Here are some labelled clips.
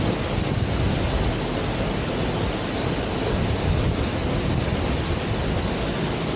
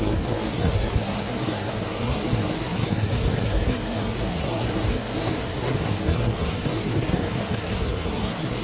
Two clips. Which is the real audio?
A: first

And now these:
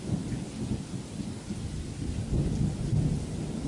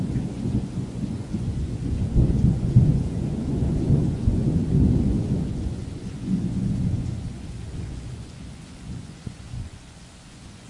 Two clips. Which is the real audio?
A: first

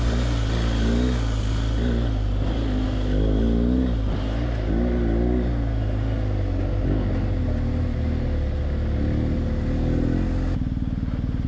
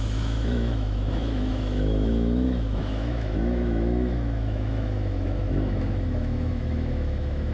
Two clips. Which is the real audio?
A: first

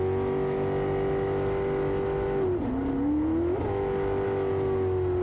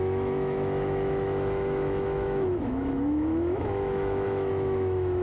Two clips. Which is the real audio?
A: first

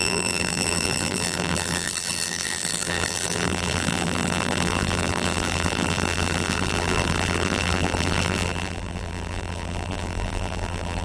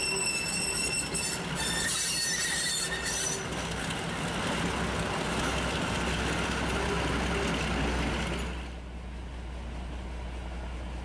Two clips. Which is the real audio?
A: second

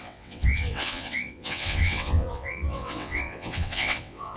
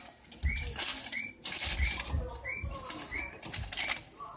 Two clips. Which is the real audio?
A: second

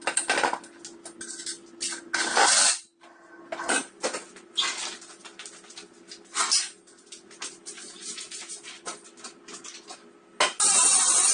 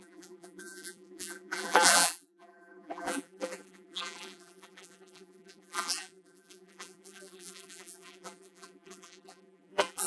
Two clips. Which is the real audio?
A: first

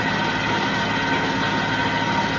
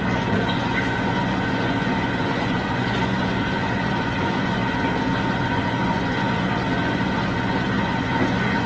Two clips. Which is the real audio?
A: first